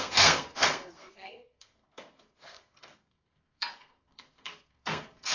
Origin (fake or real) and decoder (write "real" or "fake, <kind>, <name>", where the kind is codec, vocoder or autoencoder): fake, codec, SNAC